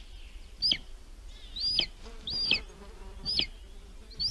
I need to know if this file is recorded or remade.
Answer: recorded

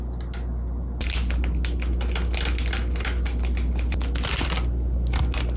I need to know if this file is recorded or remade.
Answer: recorded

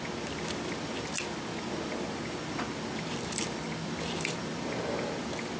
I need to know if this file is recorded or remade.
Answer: recorded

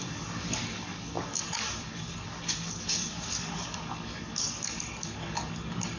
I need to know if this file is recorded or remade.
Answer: remade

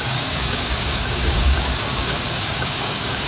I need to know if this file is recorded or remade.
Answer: remade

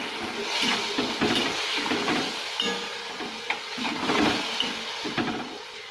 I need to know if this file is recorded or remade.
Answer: recorded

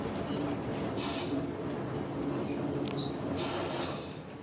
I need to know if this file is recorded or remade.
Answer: recorded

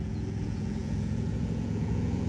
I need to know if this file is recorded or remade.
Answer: remade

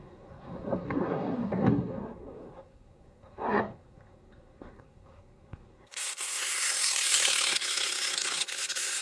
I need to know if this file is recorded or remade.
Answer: remade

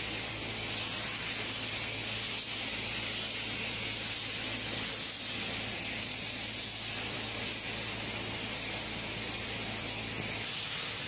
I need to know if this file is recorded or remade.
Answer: recorded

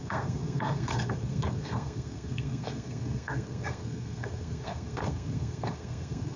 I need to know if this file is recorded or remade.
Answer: remade